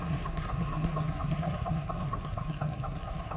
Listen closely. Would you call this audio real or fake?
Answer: fake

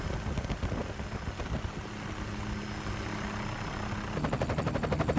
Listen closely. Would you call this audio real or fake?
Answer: real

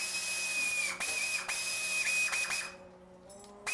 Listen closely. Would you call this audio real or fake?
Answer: real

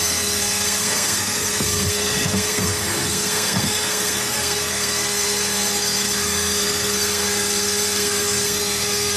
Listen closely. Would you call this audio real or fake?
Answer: fake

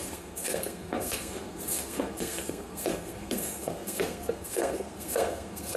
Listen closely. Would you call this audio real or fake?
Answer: fake